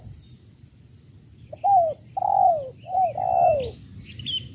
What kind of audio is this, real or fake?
real